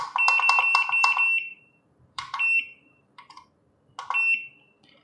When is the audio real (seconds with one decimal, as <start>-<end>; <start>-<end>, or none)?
0.0-1.5; 3.2-5.0